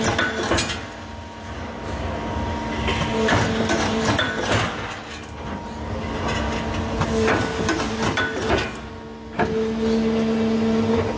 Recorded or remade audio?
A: recorded